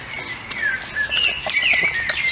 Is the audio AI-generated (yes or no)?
no